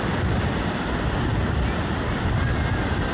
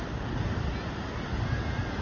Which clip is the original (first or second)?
second